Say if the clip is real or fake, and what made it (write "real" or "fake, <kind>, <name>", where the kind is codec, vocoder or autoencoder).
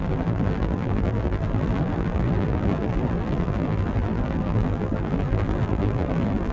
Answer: fake, vocoder, BigVGAN v2